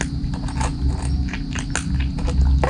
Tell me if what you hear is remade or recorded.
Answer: recorded